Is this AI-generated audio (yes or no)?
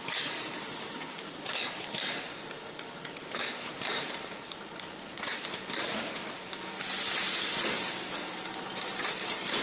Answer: no